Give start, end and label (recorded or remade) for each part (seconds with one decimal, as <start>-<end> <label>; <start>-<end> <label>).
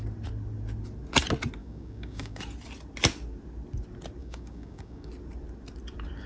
0.0-1.6 recorded; 1.6-2.4 remade; 2.4-4.2 recorded; 4.2-5.1 remade; 5.1-6.3 recorded